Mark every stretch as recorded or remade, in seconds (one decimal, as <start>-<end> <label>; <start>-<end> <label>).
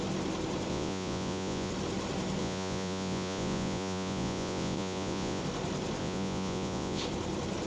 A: 0.0-0.7 recorded; 0.7-1.7 remade; 1.7-2.4 recorded; 2.4-5.4 remade; 5.4-6.0 recorded; 6.0-7.0 remade; 7.0-7.7 recorded